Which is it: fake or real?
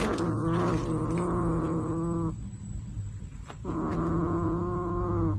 real